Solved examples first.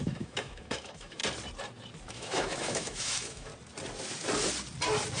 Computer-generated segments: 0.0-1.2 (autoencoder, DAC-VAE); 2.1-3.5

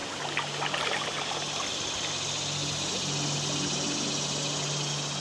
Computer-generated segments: none

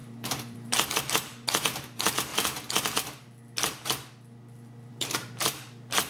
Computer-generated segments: 0.0-2.3 (vocoder, BigVGAN v2); 4.9-6.1

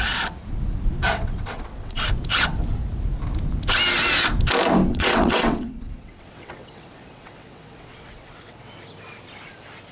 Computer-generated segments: 1.1-2.0 (vocoder, WaveNeXt); 4.9-8.7

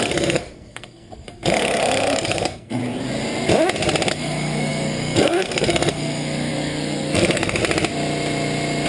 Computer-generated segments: 0.0-2.8 (codec, SNAC); 4.1-7.6

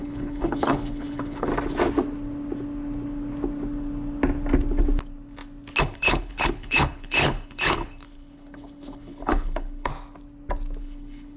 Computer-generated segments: 0.0-1.5 (codec, HILCodec); 5.8-9.9; 10.8-11.4

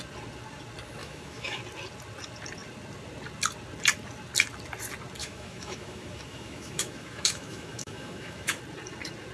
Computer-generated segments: 1.0-1.6 (autoencoder, DAC-VAE); 5.2-8.6

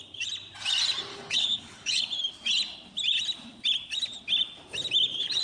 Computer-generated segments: 1.1-2.0 (codec, HILCodec)